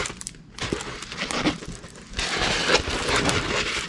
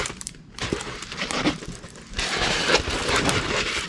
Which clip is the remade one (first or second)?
second